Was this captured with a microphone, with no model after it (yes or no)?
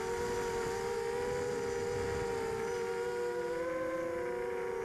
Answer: yes